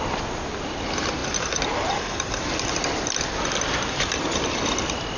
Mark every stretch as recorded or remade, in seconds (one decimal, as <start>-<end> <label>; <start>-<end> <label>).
0.0-5.2 recorded